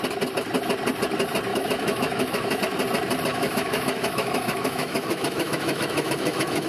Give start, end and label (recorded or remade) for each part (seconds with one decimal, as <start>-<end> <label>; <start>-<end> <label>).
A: 0.0-1.5 recorded; 1.5-2.6 remade; 2.6-3.3 recorded; 3.3-6.7 remade